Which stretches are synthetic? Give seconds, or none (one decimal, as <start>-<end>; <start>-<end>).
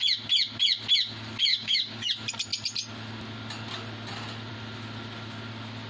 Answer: 1.5-2.1